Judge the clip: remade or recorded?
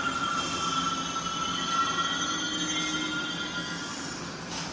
recorded